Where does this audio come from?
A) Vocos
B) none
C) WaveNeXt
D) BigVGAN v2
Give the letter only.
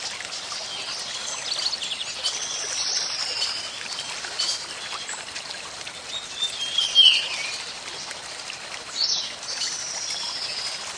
B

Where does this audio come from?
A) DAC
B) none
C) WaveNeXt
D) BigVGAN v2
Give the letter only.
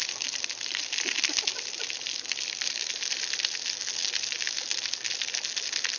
B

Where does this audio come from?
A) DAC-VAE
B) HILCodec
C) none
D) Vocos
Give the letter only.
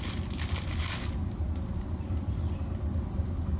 C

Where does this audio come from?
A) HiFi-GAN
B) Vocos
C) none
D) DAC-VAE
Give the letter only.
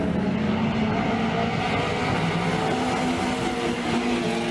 C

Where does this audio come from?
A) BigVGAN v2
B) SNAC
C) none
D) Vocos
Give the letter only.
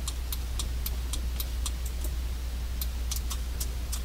C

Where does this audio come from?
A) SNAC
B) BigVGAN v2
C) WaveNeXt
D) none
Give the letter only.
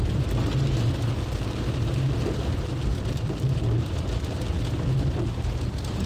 D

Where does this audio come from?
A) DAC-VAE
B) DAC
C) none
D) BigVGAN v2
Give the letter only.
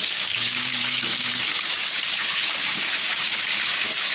B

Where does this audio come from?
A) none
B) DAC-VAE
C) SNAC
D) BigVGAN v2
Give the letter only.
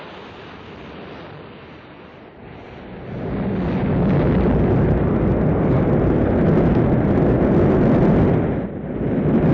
A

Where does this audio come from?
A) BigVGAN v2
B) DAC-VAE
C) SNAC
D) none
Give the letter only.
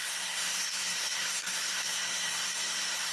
C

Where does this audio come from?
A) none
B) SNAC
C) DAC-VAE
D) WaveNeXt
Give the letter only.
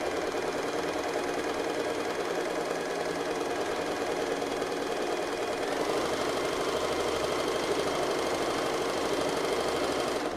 A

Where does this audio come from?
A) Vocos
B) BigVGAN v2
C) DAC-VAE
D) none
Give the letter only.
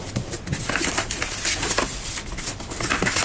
B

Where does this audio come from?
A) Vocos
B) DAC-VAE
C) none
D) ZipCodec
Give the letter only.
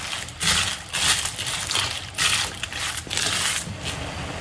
C